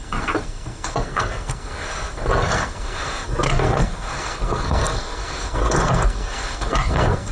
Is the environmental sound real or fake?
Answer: fake